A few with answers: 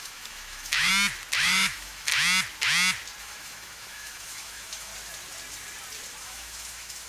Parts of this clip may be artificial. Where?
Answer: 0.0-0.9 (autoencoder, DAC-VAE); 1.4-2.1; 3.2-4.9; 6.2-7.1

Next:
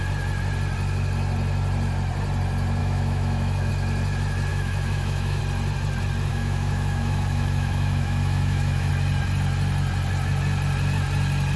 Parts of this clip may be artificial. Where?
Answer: 2.8-3.7 (autoencoder, DAC-VAE); 4.5-5.4; 6.3-8.9

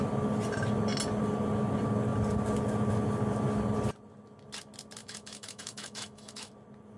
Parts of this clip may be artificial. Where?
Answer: 5.0-6.5 (autoencoder, DAC-VAE)

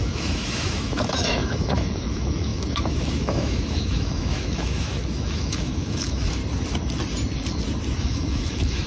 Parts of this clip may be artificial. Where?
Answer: 0.0-6.4 (autoencoder, DAC-VAE); 8.0-8.9

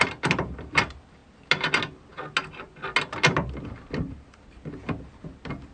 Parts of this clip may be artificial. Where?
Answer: none

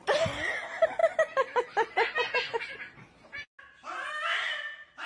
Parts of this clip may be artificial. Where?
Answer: none